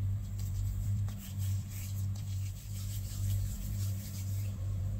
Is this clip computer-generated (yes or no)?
yes